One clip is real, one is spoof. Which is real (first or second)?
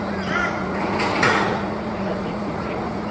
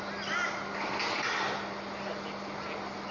second